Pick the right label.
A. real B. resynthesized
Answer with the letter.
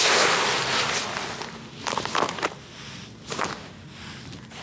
A